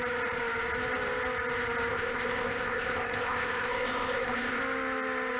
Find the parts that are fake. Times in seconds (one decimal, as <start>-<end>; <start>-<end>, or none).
1.9-4.6